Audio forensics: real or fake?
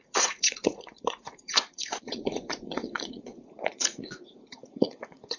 fake